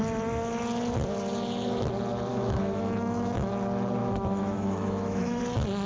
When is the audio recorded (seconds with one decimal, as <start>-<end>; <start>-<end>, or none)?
0.0-2.3; 3.5-4.0; 5.4-5.9

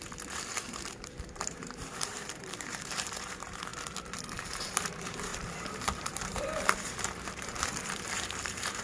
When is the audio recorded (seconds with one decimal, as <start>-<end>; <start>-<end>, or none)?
3.7-4.3

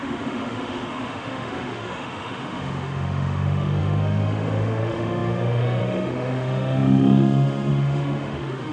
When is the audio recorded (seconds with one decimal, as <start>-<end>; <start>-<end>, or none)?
none

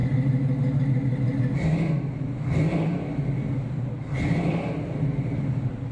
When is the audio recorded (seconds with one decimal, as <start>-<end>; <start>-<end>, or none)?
0.0-5.9